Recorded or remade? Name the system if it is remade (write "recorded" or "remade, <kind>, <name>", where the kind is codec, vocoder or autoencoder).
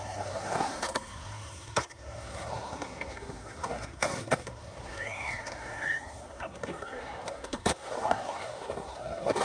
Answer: remade, codec, SNAC